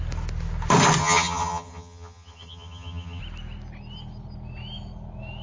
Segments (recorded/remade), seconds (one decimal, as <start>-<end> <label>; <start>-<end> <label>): 0.0-1.0 recorded; 1.0-3.2 remade; 3.2-5.4 recorded